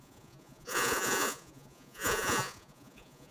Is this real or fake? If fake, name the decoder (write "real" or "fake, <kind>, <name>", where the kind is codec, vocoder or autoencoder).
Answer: fake, vocoder, Vocos